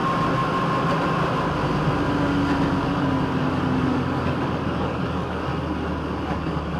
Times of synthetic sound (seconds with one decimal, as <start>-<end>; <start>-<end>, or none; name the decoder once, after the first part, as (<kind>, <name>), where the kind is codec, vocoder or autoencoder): 2.8-5.5 (codec, DAC); 6.2-6.8